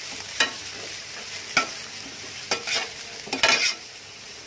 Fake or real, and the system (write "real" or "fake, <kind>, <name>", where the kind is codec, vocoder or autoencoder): real